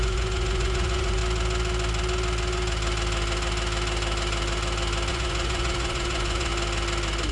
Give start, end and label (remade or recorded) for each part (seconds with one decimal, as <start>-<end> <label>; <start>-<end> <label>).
0.0-1.2 remade; 1.2-5.1 recorded; 5.1-6.5 remade; 6.5-7.3 recorded